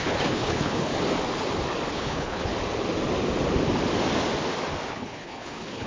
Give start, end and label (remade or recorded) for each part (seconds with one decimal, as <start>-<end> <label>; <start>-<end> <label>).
0.0-0.9 remade; 0.9-1.9 recorded; 1.9-2.5 remade; 2.5-4.9 recorded; 4.9-5.9 remade